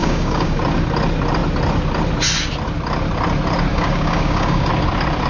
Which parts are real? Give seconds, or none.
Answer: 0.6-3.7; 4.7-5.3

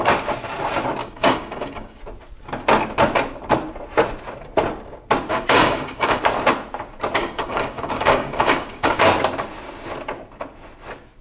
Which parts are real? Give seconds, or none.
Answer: 0.0-1.0; 2.0-5.3; 6.2-7.2; 9.0-11.2